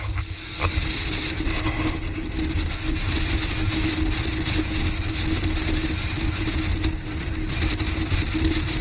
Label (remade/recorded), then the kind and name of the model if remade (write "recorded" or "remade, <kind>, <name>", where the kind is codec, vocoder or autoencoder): recorded